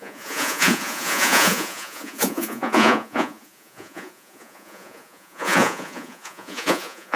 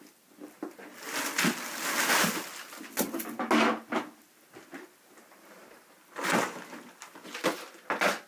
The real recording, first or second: second